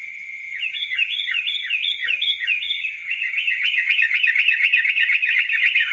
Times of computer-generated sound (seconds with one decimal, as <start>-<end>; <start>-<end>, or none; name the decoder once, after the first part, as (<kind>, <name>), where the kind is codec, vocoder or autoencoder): 0.0-5.9 (vocoder, HiFi-GAN)